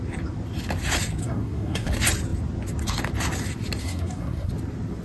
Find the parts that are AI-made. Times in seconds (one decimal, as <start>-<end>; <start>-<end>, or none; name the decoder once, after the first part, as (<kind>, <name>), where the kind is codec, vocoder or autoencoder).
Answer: 1.2-1.9 (codec, SNAC); 3.8-4.5